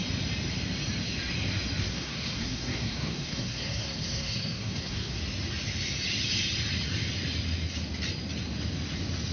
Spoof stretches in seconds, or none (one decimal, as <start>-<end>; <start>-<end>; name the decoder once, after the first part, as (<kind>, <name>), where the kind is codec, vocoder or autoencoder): 1.8-5.2 (codec, SNAC)

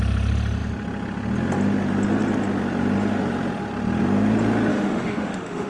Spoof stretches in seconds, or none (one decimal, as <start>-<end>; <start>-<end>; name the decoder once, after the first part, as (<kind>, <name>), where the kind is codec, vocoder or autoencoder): 4.7-5.7 (autoencoder, DAC-VAE)

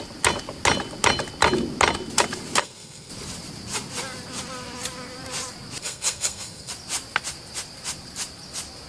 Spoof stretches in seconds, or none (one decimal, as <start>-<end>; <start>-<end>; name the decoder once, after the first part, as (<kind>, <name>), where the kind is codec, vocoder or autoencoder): 2.6-3.1 (codec, SNAC); 5.8-6.7

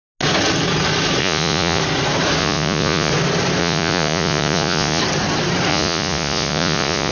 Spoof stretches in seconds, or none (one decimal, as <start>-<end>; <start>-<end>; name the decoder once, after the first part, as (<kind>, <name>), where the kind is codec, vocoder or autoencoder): 1.2-1.8 (vocoder, Vocos); 2.4-3.1; 3.6-5.0; 5.7-7.1